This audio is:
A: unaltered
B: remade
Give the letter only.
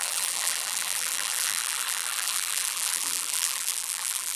B